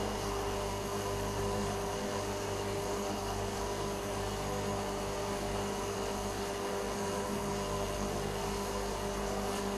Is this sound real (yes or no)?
no